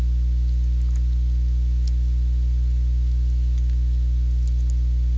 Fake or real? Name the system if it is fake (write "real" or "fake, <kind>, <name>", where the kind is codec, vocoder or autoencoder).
real